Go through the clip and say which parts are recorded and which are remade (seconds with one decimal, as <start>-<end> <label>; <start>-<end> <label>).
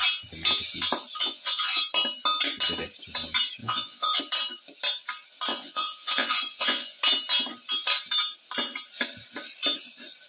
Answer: 0.0-1.2 recorded; 1.2-1.8 remade; 1.8-3.6 recorded; 3.6-4.2 remade; 4.2-5.5 recorded; 5.5-7.0 remade; 7.0-10.3 recorded